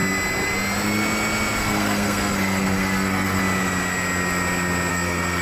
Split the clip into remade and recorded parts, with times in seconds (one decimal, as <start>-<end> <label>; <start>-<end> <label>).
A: 0.0-1.6 recorded; 1.6-3.4 remade; 3.4-4.9 recorded; 4.9-5.4 remade